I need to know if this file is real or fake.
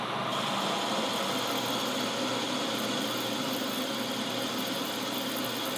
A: real